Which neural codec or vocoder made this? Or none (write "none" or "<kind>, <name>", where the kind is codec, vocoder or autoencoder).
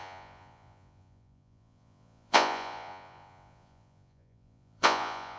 vocoder, Vocos